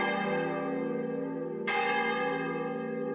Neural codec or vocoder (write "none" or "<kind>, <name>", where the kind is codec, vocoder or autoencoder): none